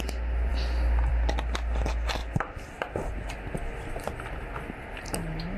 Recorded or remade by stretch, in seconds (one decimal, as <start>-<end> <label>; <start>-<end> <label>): 0.0-5.6 recorded